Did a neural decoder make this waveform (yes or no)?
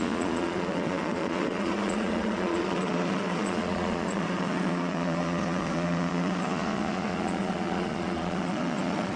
yes